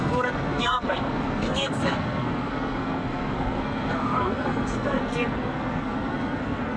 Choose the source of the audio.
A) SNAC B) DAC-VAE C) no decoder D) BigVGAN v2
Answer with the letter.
A